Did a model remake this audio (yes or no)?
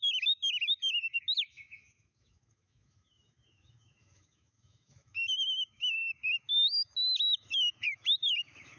yes